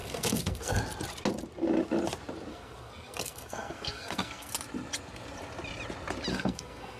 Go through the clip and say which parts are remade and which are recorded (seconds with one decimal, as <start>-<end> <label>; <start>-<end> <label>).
0.0-0.8 remade; 0.8-2.5 recorded; 2.5-4.5 remade; 4.5-6.3 recorded; 6.3-7.0 remade